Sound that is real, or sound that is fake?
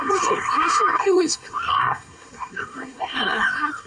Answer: fake